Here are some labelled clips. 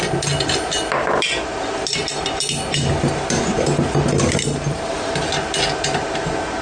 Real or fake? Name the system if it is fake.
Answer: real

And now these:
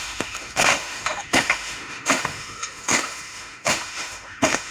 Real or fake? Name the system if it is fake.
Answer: fake, autoencoder, DAC-VAE